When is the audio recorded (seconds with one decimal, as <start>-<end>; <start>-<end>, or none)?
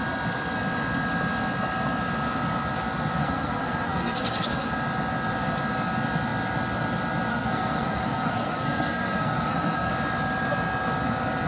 0.0-3.2; 4.7-7.3; 9.9-11.5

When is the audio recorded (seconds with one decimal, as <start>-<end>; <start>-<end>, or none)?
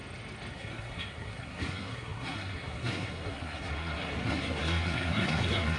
0.0-0.5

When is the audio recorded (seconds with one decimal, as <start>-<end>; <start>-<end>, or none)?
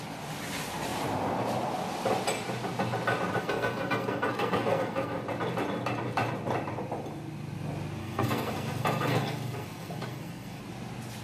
0.0-3.4; 5.2-8.0; 10.6-11.2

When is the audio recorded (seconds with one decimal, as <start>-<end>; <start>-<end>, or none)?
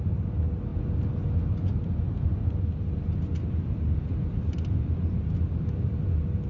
0.0-6.5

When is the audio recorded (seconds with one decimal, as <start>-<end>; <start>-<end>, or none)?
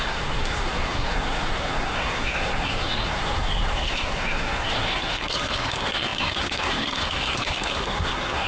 none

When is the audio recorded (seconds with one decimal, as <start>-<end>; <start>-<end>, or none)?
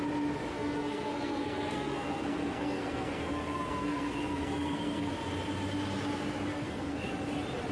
0.0-0.5; 5.1-6.5; 7.1-7.7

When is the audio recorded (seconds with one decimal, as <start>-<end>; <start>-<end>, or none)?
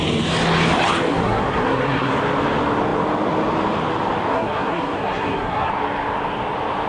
0.0-1.1; 2.1-4.3; 5.7-6.9